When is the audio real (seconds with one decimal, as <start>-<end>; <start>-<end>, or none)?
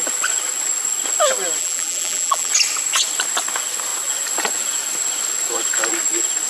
0.0-1.6; 2.5-6.5